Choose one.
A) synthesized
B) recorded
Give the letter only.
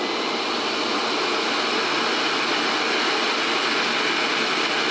B